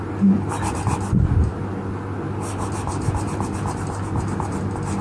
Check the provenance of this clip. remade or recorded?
recorded